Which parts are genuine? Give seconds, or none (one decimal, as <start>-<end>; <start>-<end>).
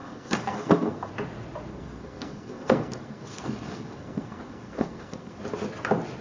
1.1-1.7; 5.4-6.2